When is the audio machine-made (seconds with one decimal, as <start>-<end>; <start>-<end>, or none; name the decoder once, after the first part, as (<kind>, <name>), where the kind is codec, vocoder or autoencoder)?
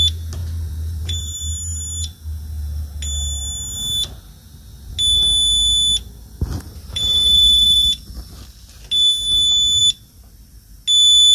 0.4-1.4 (vocoder, BigVGAN v2); 6.8-7.9